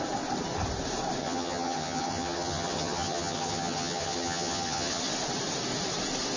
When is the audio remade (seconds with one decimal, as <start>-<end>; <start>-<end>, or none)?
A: 1.2-5.0